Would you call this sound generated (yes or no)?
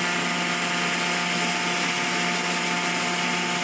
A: no